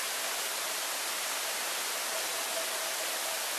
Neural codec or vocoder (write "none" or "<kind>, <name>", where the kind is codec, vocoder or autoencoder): none